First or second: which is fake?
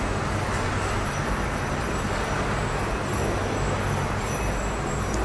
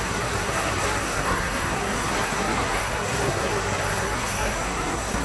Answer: second